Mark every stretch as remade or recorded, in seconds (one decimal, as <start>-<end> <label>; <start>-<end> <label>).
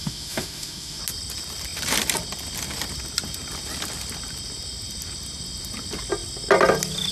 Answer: 0.0-1.0 remade; 1.0-7.1 recorded